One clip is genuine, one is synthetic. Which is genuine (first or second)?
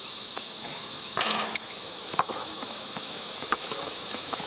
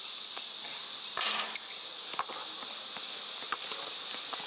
second